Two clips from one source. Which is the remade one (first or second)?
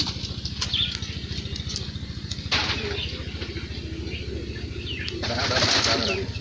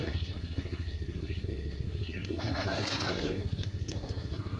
second